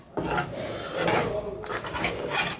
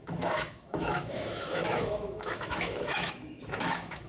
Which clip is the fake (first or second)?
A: second